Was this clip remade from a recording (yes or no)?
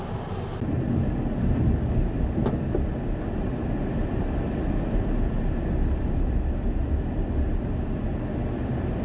no